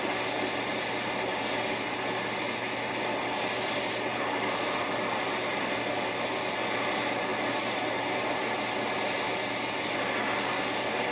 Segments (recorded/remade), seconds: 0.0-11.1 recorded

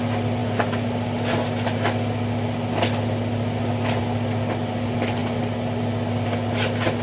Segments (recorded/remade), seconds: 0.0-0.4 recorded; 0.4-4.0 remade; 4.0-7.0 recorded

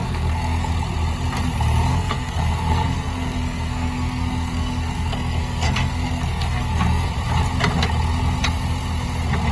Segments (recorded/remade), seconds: 0.0-0.7 remade; 0.7-1.9 recorded; 1.9-7.1 remade; 7.1-9.5 recorded